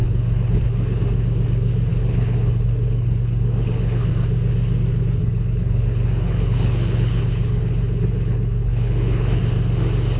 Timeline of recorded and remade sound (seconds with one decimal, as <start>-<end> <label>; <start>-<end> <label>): 0.0-1.0 remade; 1.0-1.9 recorded; 1.9-4.1 remade; 4.1-5.2 recorded; 5.2-9.4 remade; 9.4-10.2 recorded